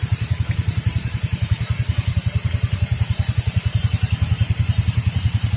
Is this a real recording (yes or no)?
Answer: no